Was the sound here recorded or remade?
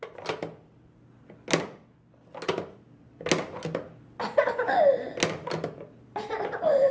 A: recorded